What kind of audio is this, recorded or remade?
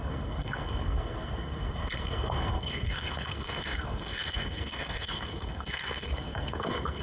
remade